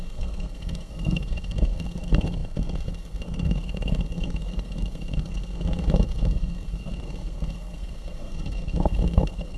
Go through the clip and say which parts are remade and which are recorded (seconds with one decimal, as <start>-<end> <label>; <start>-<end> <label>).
0.0-9.6 remade